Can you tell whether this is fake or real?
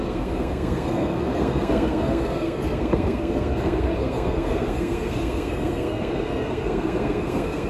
fake